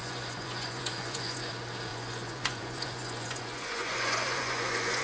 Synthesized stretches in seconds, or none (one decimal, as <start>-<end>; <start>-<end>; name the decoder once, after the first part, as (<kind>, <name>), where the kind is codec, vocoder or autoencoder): 0.0-1.5 (vocoder, Vocos); 1.9-5.0